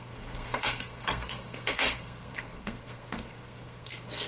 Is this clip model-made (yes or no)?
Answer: yes